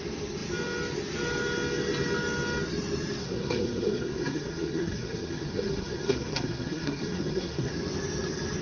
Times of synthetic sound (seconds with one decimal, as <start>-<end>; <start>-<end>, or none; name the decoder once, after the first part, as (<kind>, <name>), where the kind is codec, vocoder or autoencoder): 3.2-7.7 (codec, SNAC)